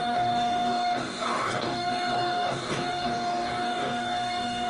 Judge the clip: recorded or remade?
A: remade